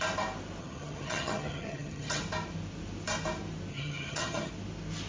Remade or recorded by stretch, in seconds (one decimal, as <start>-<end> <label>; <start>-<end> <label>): 0.0-0.6 recorded; 0.6-2.2 remade; 2.2-3.7 recorded; 3.7-4.5 remade; 4.5-5.1 recorded